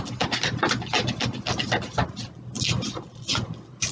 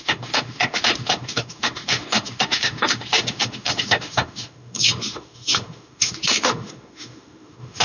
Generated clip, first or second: second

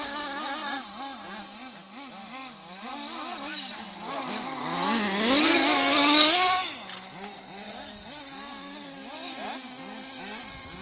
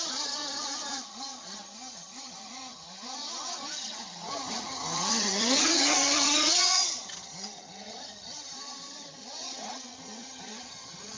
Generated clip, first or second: second